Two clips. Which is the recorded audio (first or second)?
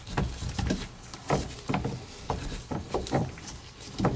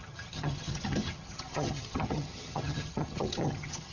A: first